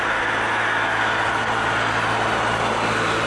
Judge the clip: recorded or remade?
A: recorded